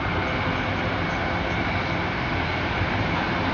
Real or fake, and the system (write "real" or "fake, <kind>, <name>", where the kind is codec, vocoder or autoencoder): real